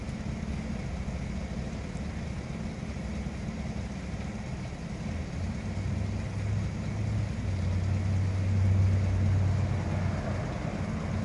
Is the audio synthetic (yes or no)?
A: no